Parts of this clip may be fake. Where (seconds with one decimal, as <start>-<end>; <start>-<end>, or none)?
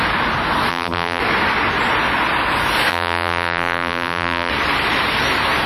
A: 0.7-1.2; 2.9-4.5